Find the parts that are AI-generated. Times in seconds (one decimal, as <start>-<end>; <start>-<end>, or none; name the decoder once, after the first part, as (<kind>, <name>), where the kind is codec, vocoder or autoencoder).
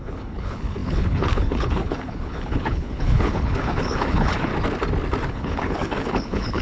0.0-4.5 (codec, HILCodec); 5.3-6.6